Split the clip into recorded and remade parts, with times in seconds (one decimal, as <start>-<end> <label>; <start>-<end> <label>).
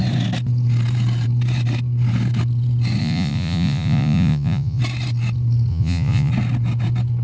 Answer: 0.0-3.0 recorded; 3.0-4.8 remade; 4.8-5.7 recorded; 5.7-6.3 remade; 6.3-7.2 recorded